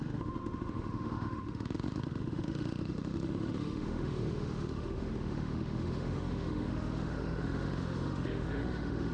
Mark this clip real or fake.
fake